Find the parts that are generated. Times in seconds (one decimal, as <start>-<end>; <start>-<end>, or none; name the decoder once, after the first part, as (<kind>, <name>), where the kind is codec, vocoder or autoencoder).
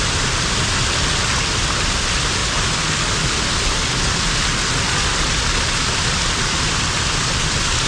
none